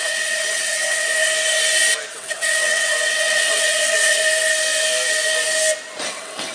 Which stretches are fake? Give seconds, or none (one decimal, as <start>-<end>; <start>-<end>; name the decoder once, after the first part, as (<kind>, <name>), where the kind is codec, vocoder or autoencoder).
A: 0.0-1.1 (vocoder, WaveNeXt); 2.1-4.2; 6.1-6.5